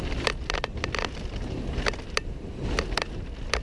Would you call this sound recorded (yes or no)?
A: yes